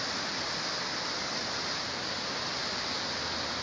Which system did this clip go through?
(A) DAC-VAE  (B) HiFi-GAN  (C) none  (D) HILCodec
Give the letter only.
C